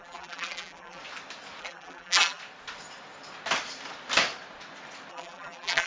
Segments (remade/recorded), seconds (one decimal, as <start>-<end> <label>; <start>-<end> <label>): 0.0-1.0 remade; 1.0-1.6 recorded; 1.6-2.4 remade; 2.4-5.1 recorded; 5.1-5.9 remade